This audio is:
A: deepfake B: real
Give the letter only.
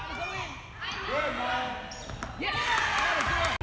B